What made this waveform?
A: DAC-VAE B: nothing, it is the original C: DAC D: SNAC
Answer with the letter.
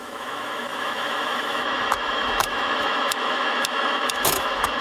A